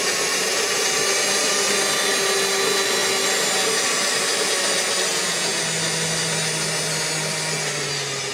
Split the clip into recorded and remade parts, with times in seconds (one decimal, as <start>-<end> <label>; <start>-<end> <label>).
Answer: 0.0-5.1 recorded; 5.1-5.6 remade; 5.6-8.3 recorded